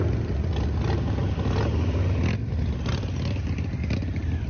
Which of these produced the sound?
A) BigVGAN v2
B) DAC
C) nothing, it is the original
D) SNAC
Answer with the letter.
C